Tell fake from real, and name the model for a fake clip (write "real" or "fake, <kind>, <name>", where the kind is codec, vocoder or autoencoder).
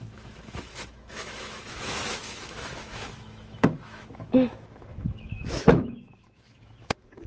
fake, autoencoder, DAC-VAE